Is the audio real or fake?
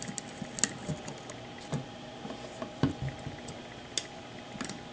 real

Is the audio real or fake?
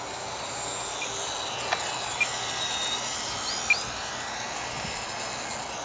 real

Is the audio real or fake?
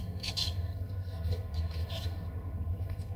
fake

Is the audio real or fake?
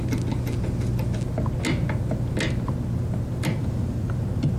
real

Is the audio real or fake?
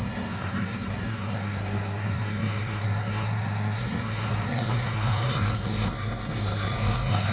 fake